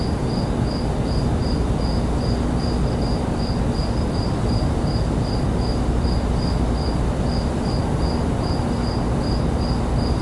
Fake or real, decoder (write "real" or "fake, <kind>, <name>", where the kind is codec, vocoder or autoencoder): real